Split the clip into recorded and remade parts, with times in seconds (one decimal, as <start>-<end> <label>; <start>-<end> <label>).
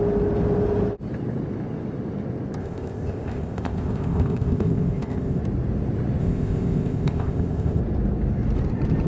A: 0.0-2.6 recorded; 2.6-5.4 remade; 5.4-6.2 recorded; 6.2-7.8 remade; 7.8-9.1 recorded